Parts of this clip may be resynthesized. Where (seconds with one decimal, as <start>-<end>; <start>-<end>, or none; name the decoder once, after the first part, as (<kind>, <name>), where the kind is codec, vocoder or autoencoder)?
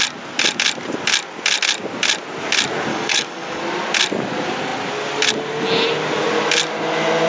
2.9-3.6 (codec, DAC)